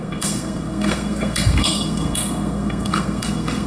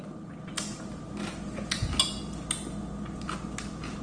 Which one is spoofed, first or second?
first